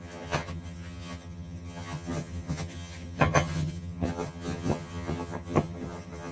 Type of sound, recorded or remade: remade